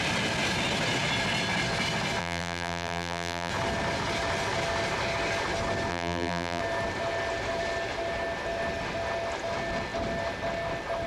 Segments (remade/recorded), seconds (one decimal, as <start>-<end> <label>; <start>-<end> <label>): 0.0-2.2 recorded; 2.2-3.5 remade; 3.5-5.9 recorded; 5.9-6.6 remade; 6.6-11.1 recorded